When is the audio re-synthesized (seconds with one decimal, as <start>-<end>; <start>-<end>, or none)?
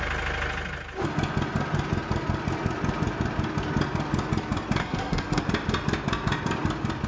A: 4.8-5.4